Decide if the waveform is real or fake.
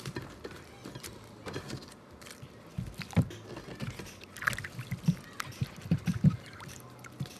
real